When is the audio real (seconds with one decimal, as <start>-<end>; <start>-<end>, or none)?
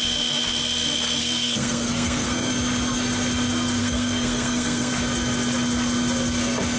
0.0-1.2; 2.5-3.8; 4.9-6.8